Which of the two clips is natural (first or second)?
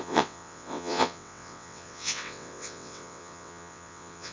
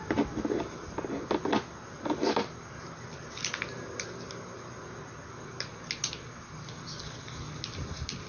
second